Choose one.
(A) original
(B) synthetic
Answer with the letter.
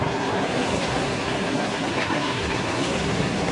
B